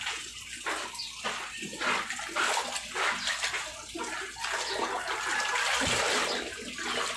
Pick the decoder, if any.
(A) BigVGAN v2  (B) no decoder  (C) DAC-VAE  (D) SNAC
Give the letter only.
B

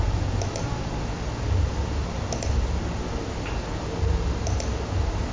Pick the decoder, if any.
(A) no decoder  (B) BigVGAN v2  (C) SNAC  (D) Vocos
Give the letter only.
A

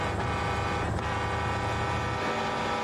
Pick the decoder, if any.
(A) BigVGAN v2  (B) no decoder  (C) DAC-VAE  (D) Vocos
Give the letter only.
B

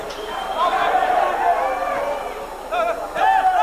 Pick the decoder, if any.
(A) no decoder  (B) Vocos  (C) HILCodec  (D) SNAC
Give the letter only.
A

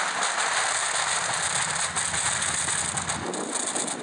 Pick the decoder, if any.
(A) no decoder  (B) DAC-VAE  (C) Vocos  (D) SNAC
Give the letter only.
A